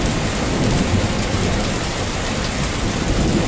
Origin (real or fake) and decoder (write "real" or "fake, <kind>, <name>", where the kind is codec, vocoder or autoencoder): real